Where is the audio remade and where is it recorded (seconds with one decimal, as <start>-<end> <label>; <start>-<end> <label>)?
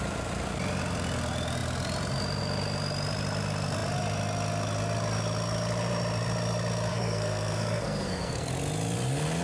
0.0-6.9 recorded; 6.9-8.5 remade; 8.5-9.4 recorded